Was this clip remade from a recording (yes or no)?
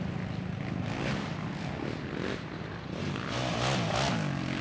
no